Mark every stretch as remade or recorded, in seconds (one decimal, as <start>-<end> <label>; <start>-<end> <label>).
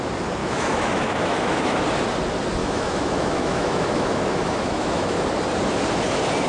0.0-0.4 recorded; 0.4-1.8 remade; 1.8-2.6 recorded; 2.6-5.2 remade; 5.2-6.5 recorded